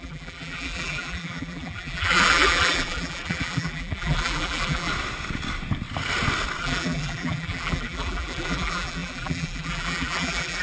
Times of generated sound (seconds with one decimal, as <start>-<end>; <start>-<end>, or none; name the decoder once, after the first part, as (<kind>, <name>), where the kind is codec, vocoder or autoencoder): 0.0-4.9 (vocoder, BigVGAN v2); 6.6-10.6